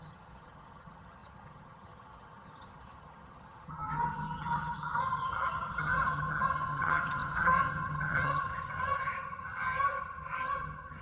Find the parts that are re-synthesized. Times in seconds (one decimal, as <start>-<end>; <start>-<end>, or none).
0.0-11.0